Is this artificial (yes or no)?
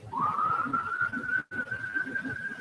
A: no